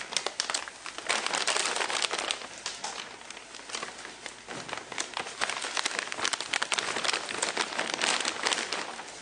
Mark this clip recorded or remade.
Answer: recorded